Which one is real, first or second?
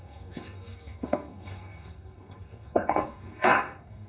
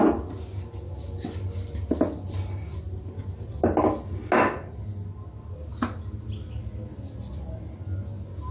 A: second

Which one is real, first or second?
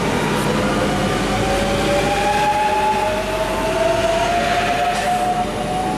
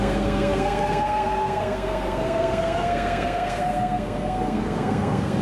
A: first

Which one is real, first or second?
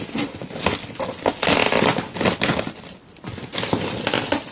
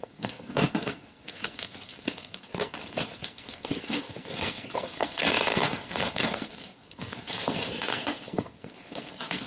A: first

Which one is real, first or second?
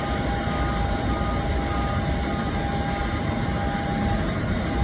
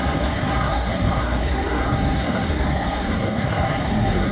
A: first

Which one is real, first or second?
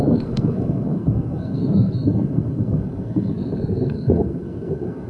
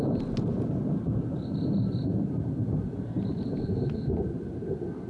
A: second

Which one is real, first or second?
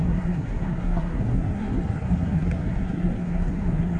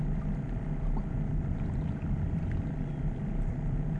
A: second